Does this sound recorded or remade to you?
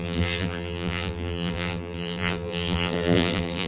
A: remade